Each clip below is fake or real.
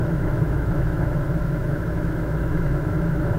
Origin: fake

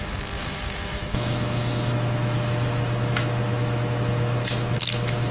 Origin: fake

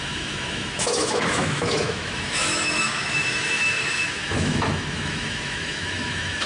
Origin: fake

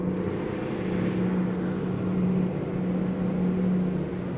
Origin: real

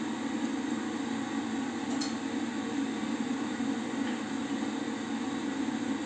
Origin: real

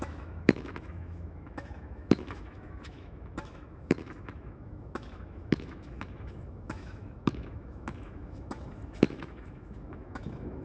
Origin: fake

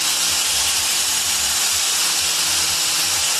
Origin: real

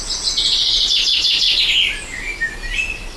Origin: real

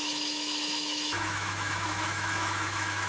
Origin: fake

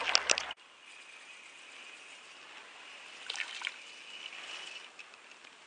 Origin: real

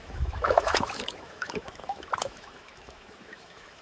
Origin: fake